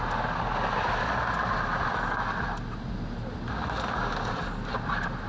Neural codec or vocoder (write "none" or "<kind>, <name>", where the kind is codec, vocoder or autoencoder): none